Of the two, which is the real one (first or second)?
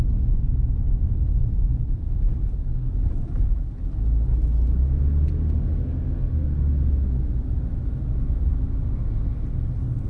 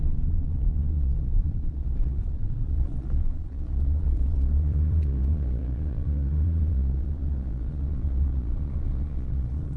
first